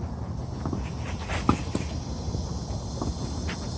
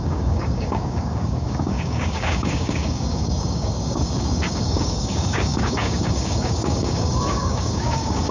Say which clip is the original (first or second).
first